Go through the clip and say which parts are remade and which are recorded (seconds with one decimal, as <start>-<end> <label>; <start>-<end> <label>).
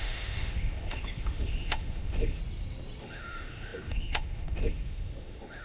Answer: 0.0-2.4 remade; 2.4-3.0 recorded; 3.0-5.6 remade